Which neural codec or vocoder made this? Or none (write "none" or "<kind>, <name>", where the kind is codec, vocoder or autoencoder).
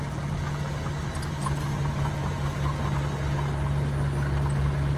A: none